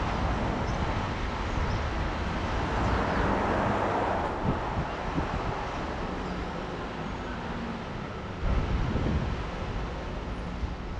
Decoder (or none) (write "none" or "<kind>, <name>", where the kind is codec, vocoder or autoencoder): none